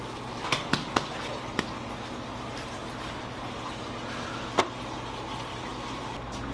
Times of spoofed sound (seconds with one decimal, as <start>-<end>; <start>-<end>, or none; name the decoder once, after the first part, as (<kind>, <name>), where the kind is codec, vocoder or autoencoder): none